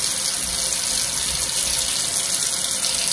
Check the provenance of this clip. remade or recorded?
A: recorded